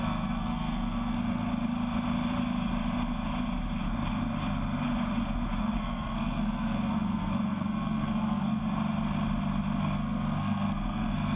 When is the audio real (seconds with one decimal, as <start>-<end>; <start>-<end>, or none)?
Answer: 1.5-5.6; 8.6-9.8